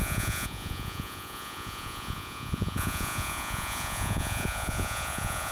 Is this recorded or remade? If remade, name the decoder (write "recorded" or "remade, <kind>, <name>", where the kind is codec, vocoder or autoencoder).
remade, vocoder, Vocos